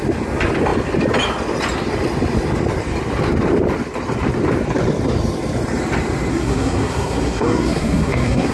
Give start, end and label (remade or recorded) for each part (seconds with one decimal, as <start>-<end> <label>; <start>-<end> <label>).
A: 0.0-6.3 recorded; 6.3-8.5 remade